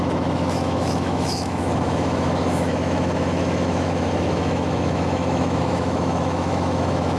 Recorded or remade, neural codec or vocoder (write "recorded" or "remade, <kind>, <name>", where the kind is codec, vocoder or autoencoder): remade, autoencoder, DAC-VAE